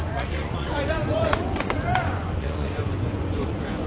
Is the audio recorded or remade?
remade